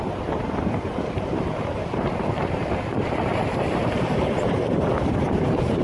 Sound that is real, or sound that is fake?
fake